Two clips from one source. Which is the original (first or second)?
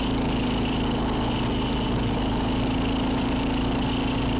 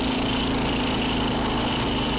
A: first